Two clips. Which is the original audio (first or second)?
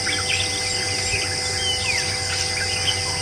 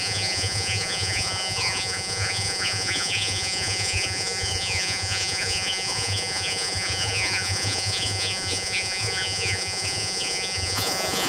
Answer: first